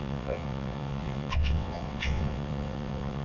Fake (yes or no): yes